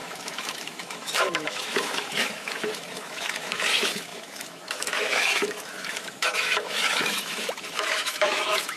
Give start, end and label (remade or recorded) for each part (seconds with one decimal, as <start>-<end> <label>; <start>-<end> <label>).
0.0-8.8 remade